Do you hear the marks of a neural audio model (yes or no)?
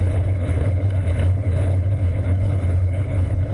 yes